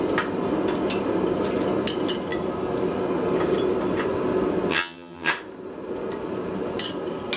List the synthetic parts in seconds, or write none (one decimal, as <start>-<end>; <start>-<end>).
4.7-5.3